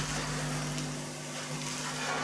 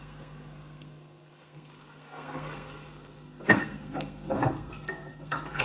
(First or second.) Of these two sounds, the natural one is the first